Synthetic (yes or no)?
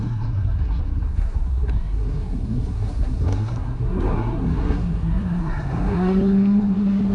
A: yes